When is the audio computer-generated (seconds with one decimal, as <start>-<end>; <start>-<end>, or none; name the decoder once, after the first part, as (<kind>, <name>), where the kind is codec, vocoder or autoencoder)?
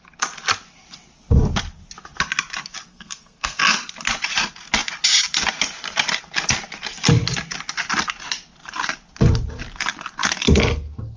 2.9-3.6 (codec, SNAC)